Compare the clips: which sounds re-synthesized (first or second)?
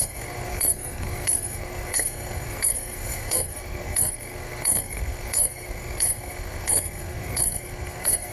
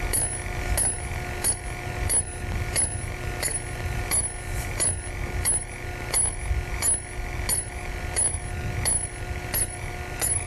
first